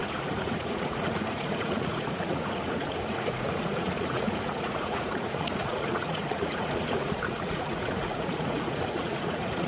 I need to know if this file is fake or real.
fake